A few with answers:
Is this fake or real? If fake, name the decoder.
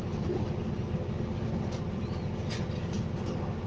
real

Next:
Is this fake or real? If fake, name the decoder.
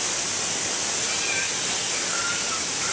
real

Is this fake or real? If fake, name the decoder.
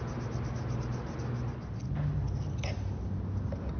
real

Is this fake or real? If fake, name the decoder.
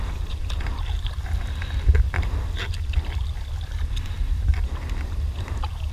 real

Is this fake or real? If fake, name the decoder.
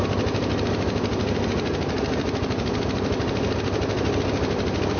real